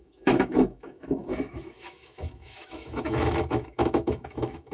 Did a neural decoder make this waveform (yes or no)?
yes